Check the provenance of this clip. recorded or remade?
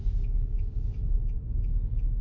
recorded